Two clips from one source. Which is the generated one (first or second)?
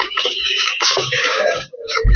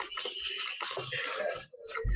first